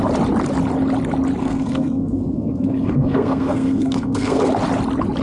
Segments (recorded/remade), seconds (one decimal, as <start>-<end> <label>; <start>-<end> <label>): 0.0-1.4 recorded; 1.4-4.5 remade; 4.5-5.2 recorded